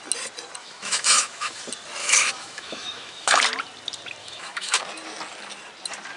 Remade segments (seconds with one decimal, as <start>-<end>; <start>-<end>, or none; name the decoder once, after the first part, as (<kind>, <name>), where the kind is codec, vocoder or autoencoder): 0.6-1.6 (autoencoder, DAC-VAE); 2.0-3.4; 4.2-4.8